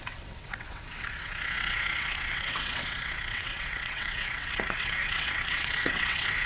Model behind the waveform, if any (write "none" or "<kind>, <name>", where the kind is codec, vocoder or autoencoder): vocoder, WaveNeXt